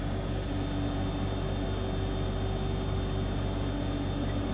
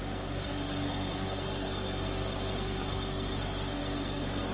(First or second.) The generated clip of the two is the second